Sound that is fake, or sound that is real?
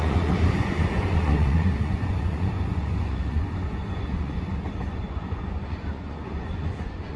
fake